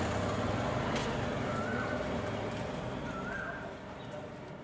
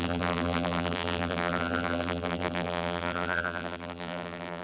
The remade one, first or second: second